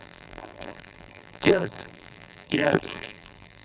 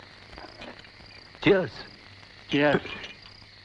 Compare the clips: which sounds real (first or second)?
second